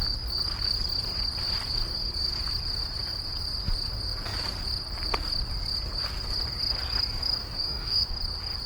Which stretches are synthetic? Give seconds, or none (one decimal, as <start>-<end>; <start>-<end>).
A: 7.4-8.1